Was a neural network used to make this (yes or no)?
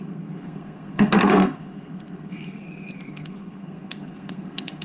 yes